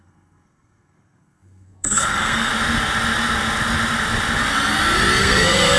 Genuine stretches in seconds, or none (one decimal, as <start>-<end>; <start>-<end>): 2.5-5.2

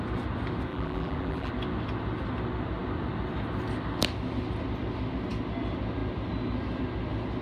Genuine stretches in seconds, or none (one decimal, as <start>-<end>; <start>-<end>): 0.0-0.7; 1.5-7.4

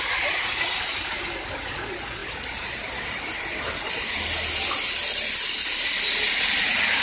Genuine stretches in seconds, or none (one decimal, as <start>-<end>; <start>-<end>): 0.0-7.0

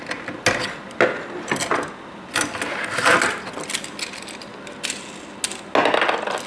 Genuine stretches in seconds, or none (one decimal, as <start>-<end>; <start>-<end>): 0.0-6.5

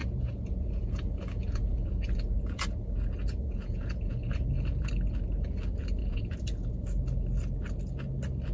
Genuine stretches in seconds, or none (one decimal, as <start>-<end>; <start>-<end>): 4.9-6.0; 6.7-8.5

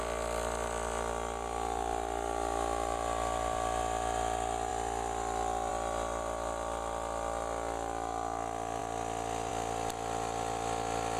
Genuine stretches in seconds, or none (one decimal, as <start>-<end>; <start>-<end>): 0.0-4.7; 5.7-11.2